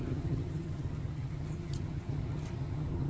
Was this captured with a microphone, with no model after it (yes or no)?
no